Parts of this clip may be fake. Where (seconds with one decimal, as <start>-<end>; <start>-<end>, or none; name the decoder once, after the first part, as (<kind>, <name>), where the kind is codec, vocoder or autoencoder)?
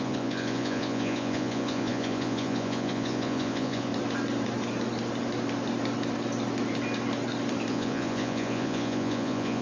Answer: 0.0-3.9 (vocoder, Vocos); 7.7-9.6